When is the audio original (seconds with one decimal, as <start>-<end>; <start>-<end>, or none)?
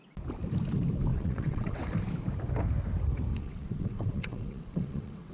0.0-1.1; 1.8-3.3